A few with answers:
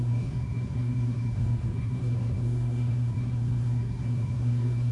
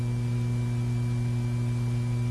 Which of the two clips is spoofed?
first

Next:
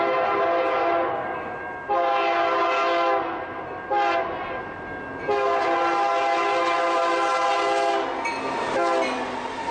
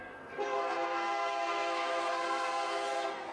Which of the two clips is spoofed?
second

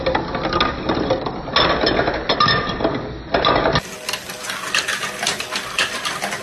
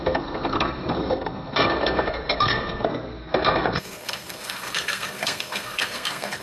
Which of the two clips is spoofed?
second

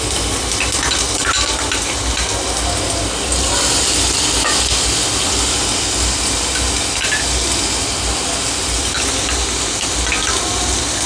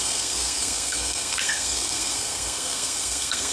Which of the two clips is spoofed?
second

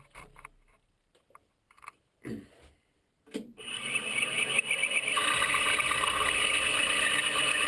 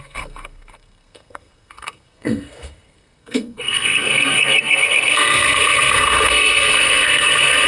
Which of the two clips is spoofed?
second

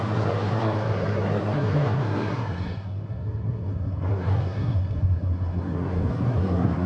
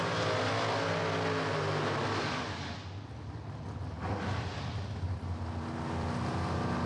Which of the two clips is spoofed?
first